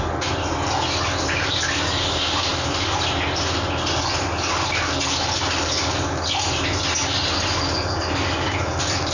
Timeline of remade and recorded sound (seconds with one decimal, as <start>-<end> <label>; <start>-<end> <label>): 0.0-9.1 recorded

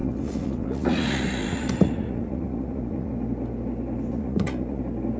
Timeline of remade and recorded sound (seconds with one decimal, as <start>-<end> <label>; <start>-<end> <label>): 0.0-3.1 remade; 3.1-4.1 recorded; 4.1-4.8 remade; 4.8-5.2 recorded

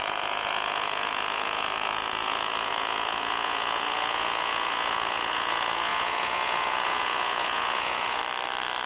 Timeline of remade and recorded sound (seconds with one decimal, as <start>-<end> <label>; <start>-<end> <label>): 0.0-8.2 remade; 8.2-8.9 recorded

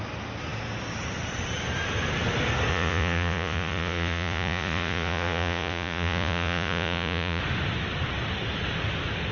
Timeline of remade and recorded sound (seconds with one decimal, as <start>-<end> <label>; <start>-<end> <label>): 0.0-2.7 recorded; 2.7-7.4 remade; 7.4-9.3 recorded

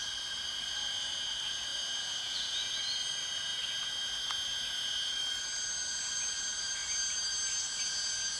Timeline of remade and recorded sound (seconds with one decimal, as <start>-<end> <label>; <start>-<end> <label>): 0.0-8.4 recorded

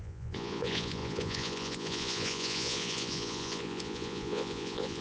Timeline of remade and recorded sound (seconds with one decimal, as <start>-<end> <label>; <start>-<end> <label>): 0.0-5.0 remade